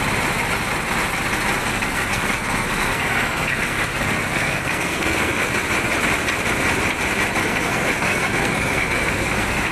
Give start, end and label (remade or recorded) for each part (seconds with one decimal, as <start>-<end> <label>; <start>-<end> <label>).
0.0-1.6 recorded; 1.6-5.5 remade; 5.5-7.4 recorded; 7.4-9.7 remade